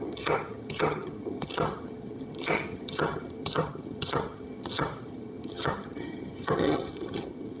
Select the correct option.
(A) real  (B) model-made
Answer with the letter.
B